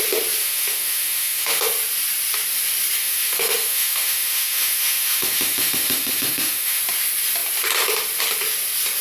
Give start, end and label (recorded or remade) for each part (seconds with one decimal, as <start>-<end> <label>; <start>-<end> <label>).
0.0-0.4 recorded; 0.4-1.6 remade; 1.6-3.0 recorded; 3.0-6.8 remade; 6.8-9.0 recorded